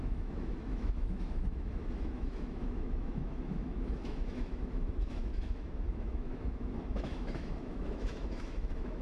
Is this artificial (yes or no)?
yes